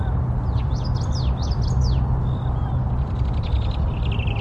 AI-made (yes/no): no